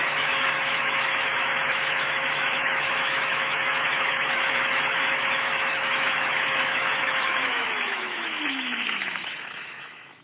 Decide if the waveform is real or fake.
fake